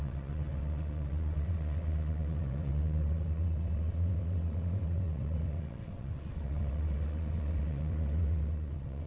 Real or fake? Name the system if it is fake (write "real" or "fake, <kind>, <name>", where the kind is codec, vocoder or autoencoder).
fake, vocoder, WaveNeXt